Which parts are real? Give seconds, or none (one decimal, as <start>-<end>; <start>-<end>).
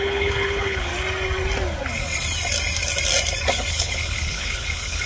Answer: 0.9-3.7